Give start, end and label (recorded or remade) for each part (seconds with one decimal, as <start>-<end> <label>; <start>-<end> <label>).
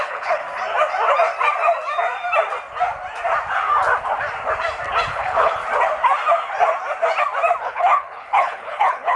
0.0-0.4 remade; 0.4-5.1 recorded; 5.1-5.6 remade; 5.6-7.6 recorded; 7.6-9.2 remade